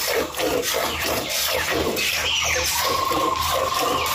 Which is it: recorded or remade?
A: recorded